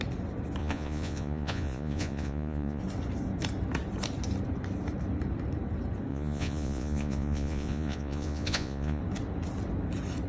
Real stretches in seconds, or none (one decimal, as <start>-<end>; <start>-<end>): 0.0-0.6; 2.8-6.1; 9.0-10.3